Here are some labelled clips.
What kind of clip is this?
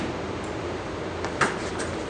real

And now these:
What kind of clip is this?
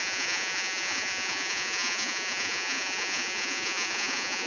fake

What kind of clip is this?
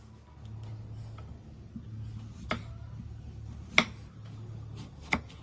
real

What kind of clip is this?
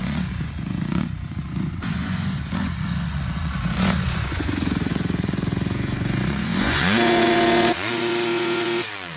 fake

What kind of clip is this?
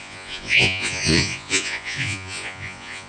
fake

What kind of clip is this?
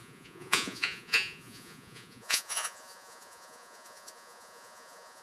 fake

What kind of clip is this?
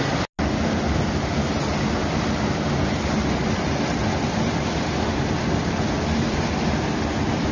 real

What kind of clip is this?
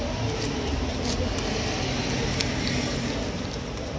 real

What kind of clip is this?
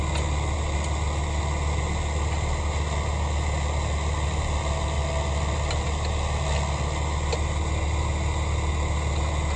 real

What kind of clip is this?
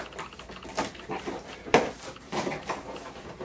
real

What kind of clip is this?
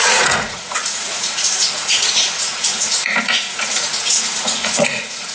fake